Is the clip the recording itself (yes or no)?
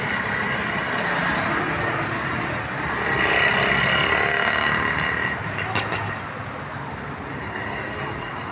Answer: yes